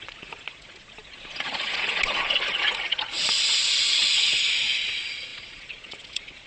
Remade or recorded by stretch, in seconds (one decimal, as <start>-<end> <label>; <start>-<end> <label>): 0.0-6.5 remade